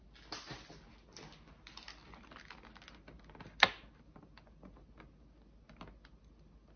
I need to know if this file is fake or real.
real